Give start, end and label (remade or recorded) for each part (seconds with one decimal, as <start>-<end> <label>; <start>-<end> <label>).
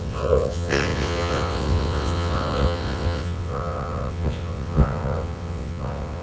0.0-6.2 remade